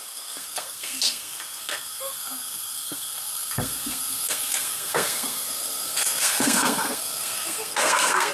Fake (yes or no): yes